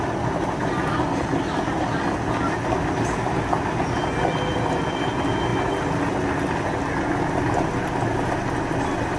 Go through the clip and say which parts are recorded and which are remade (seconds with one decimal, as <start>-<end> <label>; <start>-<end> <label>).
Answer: 0.0-4.3 recorded; 4.3-4.8 remade; 4.8-9.2 recorded